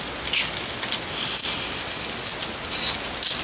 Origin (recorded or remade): recorded